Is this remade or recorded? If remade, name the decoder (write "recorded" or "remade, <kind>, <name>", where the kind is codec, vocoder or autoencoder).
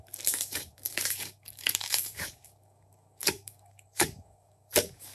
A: remade, codec, DAC